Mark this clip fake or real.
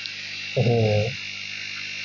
real